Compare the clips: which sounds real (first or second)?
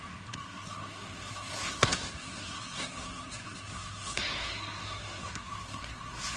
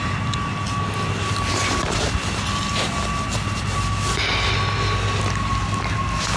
second